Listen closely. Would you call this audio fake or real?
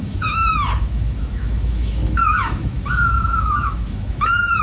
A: fake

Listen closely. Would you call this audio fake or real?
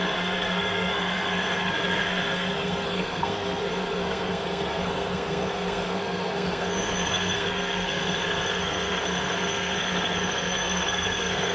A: fake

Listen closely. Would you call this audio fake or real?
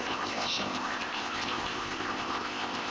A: fake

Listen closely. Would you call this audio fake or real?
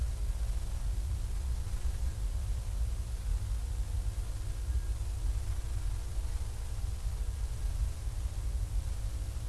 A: real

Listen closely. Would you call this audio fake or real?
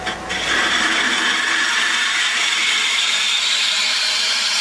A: fake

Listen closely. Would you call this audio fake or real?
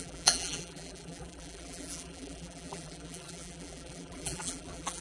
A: fake